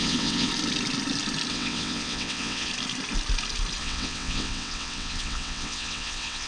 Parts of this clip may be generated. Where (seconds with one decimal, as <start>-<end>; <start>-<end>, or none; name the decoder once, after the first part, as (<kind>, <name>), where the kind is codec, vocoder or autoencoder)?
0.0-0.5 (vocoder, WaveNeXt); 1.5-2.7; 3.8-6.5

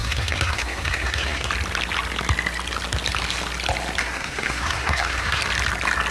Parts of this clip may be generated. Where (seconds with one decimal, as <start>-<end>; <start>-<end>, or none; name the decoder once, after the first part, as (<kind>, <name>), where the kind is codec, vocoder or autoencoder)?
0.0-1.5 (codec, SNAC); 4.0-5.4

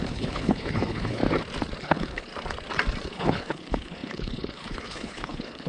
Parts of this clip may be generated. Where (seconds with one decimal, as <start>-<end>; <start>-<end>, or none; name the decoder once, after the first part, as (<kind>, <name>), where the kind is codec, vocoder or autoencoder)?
0.0-1.2 (codec, HILCodec); 1.8-2.3; 3.1-5.7